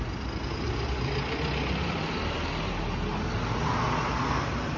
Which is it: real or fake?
real